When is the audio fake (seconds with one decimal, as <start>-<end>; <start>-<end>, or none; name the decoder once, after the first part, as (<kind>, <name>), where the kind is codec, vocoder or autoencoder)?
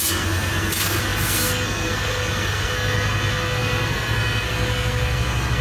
0.0-5.6 (codec, SNAC)